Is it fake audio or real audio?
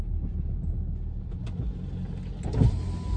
real